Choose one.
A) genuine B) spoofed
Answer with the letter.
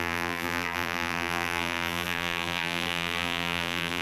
B